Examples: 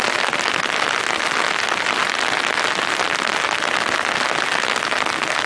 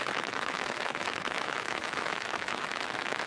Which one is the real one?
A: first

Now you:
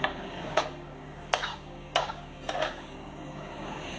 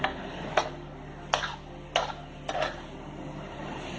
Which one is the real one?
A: second